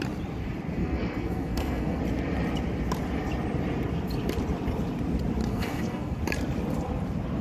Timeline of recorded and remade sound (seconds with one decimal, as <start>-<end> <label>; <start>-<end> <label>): 0.0-0.8 recorded; 0.8-2.0 remade; 2.0-5.4 recorded; 5.4-6.2 remade; 6.2-7.4 recorded